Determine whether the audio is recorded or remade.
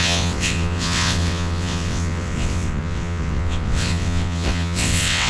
remade